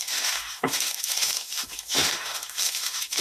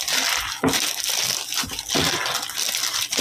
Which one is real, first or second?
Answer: second